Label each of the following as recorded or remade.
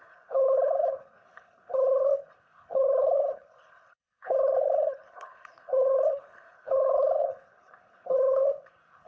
remade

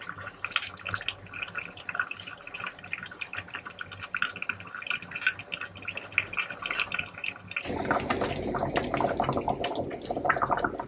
recorded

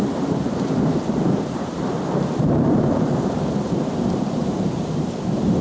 remade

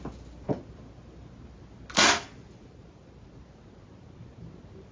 recorded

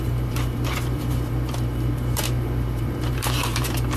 remade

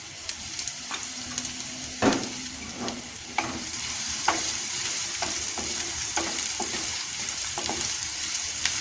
remade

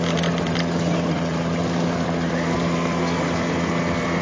recorded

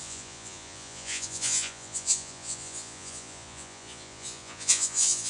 remade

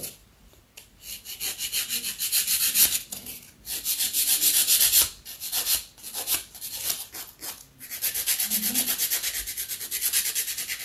recorded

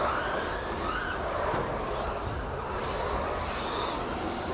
recorded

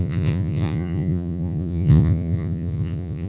remade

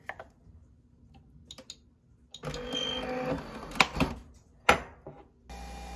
recorded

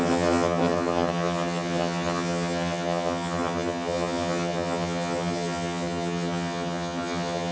remade